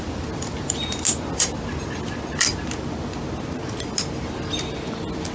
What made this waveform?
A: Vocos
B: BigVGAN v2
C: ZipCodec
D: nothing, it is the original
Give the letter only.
D